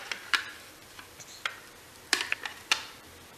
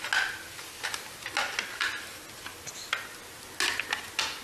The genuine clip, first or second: second